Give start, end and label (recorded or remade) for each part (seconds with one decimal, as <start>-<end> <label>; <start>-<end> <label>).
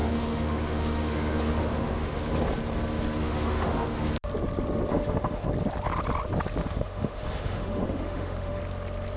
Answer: 0.0-2.3 remade; 2.3-3.2 recorded; 3.2-4.1 remade; 4.1-4.9 recorded; 4.9-5.5 remade; 5.5-6.6 recorded; 6.6-8.6 remade; 8.6-9.2 recorded